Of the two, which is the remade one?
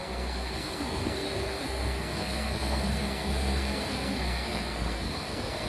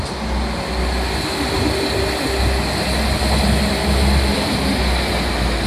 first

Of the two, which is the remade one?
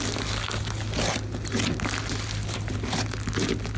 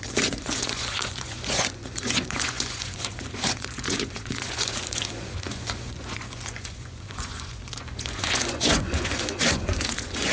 second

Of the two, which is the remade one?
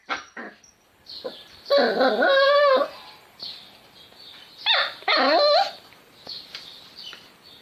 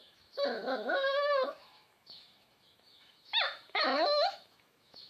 second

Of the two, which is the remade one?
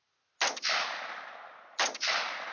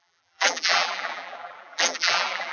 second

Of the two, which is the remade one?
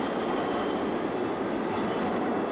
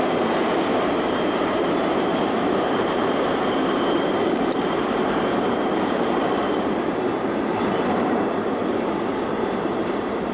second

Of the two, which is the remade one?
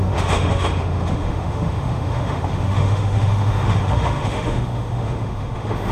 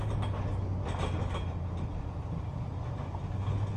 first